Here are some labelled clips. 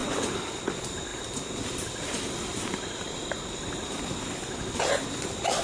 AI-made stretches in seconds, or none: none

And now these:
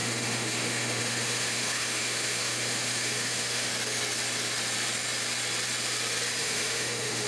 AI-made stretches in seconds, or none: 0.0-3.7 (autoencoder, DAC-VAE); 6.4-7.3